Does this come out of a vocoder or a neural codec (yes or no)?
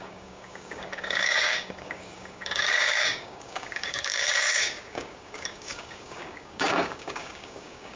yes